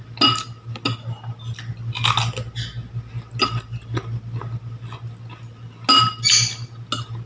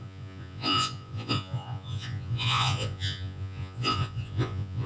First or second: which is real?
first